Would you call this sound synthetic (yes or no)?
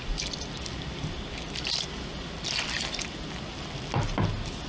no